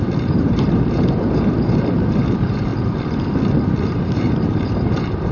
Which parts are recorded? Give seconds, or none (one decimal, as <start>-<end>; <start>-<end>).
2.7-3.9